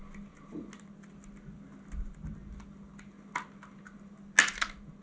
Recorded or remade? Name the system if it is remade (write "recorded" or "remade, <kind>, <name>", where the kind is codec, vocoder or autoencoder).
recorded